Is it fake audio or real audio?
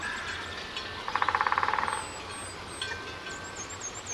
real